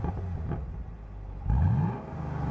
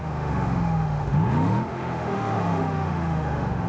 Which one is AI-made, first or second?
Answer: second